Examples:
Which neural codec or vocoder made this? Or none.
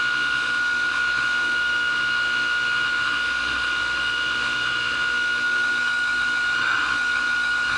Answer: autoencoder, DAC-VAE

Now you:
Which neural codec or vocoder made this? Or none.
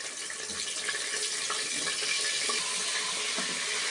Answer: none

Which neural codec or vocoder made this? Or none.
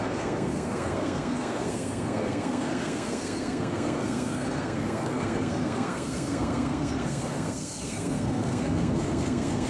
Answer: codec, SNAC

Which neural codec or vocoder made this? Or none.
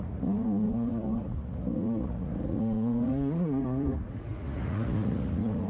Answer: vocoder, Vocos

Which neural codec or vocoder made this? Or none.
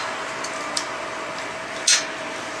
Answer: none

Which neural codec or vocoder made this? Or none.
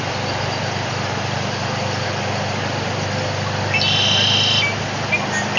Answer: none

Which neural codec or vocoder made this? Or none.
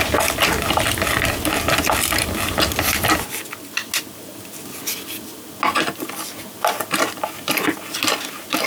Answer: none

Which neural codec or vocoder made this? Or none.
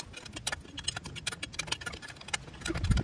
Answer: none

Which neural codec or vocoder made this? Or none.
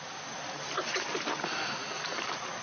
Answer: none